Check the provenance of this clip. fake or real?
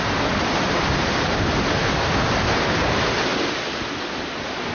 fake